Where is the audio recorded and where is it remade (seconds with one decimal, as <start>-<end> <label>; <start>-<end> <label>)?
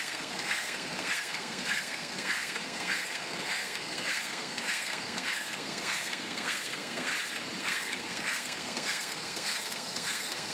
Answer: 0.0-7.1 remade; 7.1-7.6 recorded; 7.6-10.5 remade